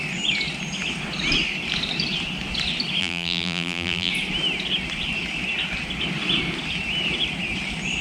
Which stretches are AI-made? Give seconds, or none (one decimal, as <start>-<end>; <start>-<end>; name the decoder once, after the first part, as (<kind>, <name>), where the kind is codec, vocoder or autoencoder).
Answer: 3.0-4.1 (vocoder, BigVGAN v2)

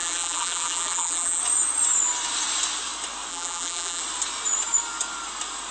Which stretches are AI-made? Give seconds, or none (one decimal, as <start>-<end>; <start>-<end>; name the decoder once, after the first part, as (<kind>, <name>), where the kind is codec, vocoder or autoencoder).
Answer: 0.0-1.4 (vocoder, BigVGAN v2); 3.3-4.0

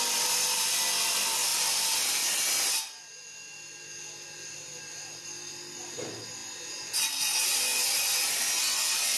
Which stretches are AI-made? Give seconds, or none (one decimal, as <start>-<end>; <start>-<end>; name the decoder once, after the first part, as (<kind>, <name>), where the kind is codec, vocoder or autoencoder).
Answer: none

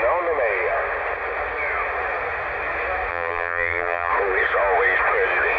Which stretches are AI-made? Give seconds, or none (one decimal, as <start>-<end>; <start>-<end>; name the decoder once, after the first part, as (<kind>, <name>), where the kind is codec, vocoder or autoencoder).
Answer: 3.1-4.1 (vocoder, BigVGAN v2)